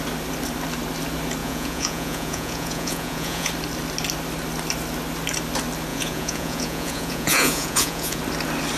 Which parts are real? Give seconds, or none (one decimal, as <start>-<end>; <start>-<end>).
0.0-1.4; 3.5-5.9; 8.2-8.8